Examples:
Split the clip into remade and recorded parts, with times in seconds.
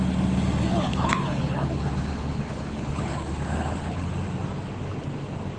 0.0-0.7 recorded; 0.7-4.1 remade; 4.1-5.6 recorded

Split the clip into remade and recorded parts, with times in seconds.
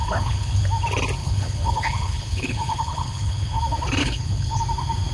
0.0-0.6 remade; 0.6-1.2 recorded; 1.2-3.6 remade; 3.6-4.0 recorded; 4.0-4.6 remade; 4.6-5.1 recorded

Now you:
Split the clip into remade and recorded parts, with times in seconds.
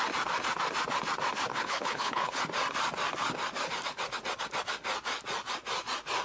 0.0-1.5 recorded; 1.5-2.4 remade; 2.4-6.2 recorded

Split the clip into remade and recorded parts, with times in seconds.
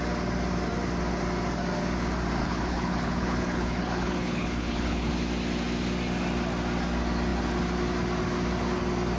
0.0-2.4 recorded; 2.4-5.1 remade; 5.1-9.2 recorded